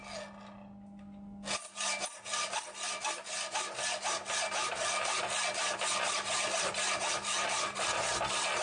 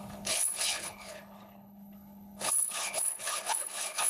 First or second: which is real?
first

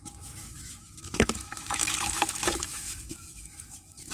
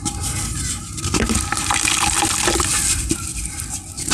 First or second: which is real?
second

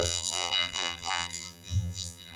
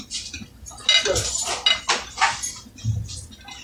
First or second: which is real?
second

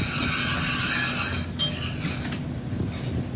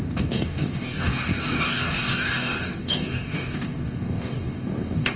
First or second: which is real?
first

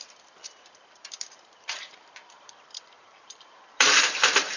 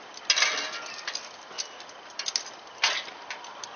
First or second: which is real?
second